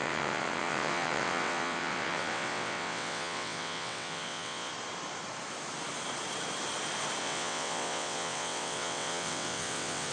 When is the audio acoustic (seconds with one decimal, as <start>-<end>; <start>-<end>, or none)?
4.7-7.2